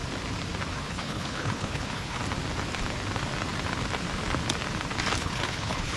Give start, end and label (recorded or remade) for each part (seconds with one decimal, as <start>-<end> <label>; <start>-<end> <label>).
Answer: 0.0-0.8 recorded; 0.8-2.2 remade; 2.2-5.2 recorded; 5.2-6.0 remade